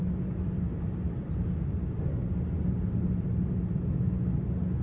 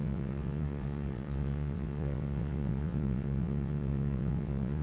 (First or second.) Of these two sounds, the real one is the first